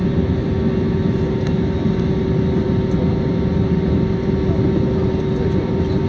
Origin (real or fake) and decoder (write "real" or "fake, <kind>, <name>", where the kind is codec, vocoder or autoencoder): real